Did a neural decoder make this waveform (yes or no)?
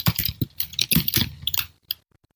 yes